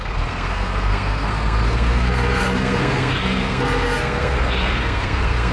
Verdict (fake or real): fake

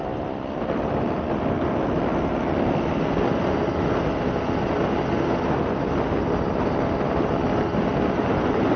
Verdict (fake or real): real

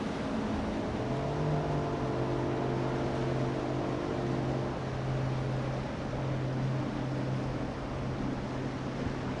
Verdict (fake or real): real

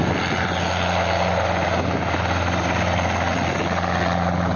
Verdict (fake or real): real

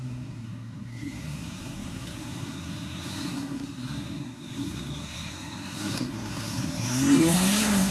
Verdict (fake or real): fake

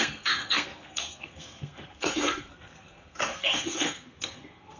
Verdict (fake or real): fake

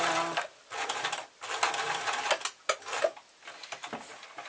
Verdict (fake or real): real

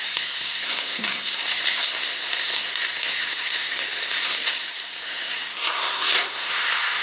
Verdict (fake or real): fake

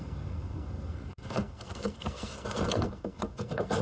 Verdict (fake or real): fake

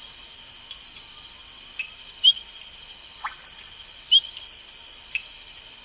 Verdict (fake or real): real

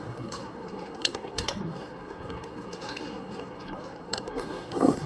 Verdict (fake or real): fake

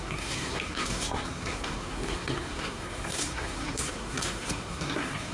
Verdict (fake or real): fake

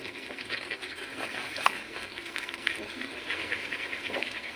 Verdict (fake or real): fake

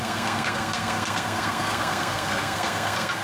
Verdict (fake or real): fake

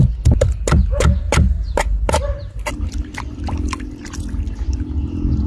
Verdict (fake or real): real